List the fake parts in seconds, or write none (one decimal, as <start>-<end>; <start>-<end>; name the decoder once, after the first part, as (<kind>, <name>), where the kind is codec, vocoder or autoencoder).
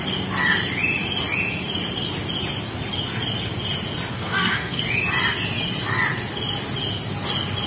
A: 4.1-4.8 (codec, SNAC)